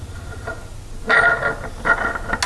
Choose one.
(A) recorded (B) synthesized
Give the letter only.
A